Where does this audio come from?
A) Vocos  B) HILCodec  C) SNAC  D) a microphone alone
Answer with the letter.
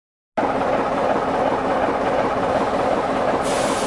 D